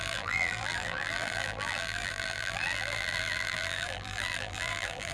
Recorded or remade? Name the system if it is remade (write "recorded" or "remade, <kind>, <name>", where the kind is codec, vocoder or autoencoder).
remade, vocoder, BigVGAN v2